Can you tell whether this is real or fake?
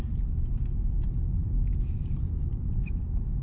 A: real